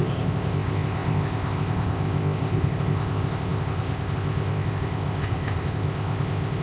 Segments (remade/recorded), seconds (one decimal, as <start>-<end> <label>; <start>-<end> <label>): 0.0-6.6 remade